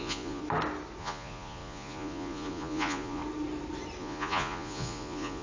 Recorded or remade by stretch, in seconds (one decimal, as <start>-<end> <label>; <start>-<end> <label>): 0.0-0.4 remade; 0.4-1.0 recorded; 1.0-3.2 remade; 3.2-4.0 recorded; 4.0-5.4 remade